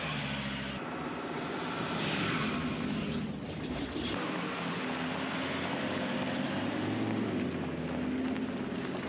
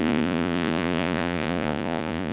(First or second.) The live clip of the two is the first